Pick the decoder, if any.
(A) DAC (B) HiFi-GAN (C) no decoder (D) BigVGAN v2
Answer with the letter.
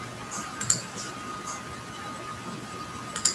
C